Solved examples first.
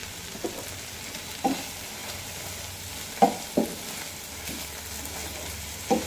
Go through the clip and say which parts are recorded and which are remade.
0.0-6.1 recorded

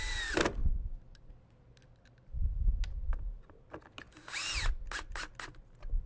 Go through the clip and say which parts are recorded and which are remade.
0.0-6.1 recorded

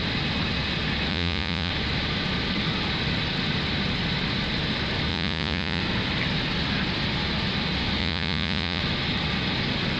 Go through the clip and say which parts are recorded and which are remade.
0.0-1.1 recorded; 1.1-1.7 remade; 1.7-5.1 recorded; 5.1-5.8 remade; 5.8-8.0 recorded; 8.0-8.8 remade; 8.8-10.0 recorded

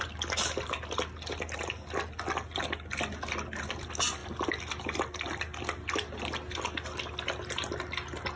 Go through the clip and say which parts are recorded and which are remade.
0.0-8.4 recorded

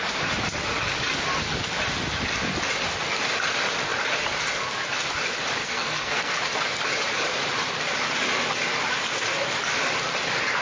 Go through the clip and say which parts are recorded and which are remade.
0.0-5.6 recorded; 5.6-6.4 remade; 6.4-10.6 recorded

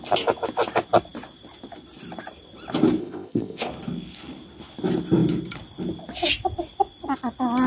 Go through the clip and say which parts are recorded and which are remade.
0.0-3.0 recorded; 3.0-3.7 remade; 3.7-7.7 recorded